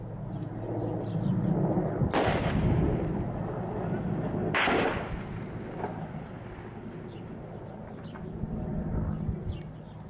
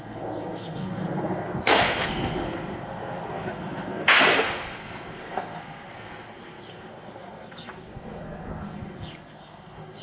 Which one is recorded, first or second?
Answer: first